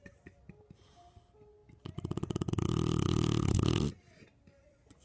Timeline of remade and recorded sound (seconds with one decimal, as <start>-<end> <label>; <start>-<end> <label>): 0.0-5.0 recorded